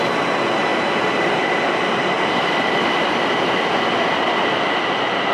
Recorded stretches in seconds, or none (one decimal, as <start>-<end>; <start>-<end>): 0.0-0.7; 3.7-5.3